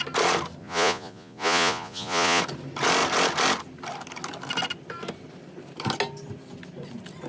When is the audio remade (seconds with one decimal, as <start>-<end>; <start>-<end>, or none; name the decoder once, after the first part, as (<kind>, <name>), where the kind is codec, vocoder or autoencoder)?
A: 0.6-2.4 (vocoder, Vocos)